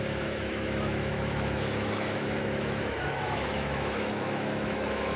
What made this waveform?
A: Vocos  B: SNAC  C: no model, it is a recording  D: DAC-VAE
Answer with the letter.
D